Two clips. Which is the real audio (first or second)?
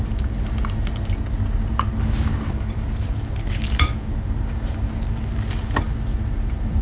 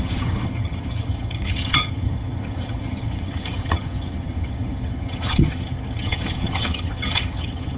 first